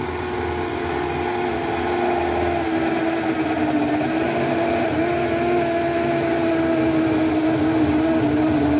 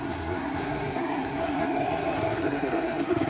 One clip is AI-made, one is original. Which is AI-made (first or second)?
second